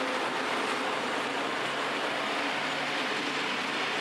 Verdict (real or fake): real